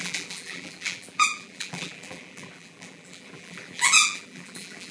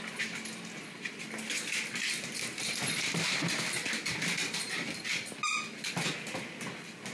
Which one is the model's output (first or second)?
first